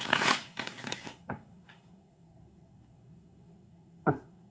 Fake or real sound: fake